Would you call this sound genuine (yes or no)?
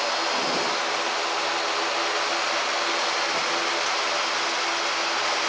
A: yes